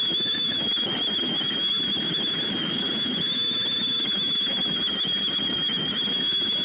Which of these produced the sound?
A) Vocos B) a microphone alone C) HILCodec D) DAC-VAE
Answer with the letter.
D